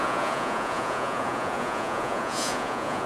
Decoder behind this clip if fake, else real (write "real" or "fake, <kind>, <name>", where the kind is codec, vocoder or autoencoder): fake, vocoder, Vocos